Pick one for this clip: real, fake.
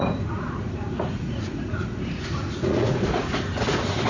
fake